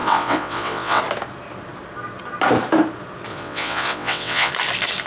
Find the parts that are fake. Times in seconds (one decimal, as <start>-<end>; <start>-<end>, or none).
0.0-1.0; 3.3-4.5